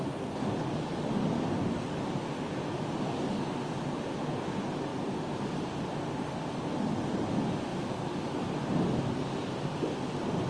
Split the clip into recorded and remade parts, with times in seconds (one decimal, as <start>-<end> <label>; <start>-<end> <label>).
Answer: 0.0-10.5 recorded